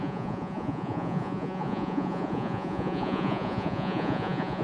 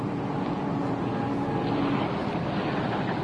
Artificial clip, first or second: first